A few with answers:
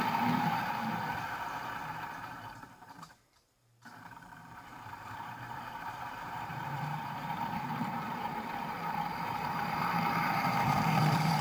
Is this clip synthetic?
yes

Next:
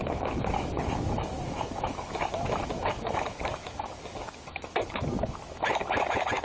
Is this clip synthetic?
yes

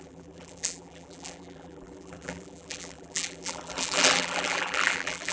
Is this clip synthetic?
yes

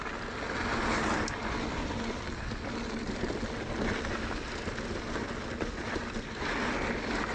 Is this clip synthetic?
no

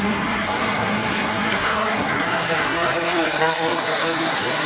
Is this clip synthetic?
yes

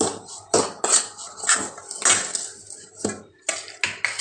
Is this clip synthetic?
no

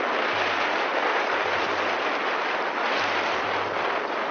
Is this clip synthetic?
no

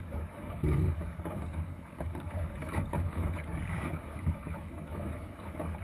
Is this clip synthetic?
yes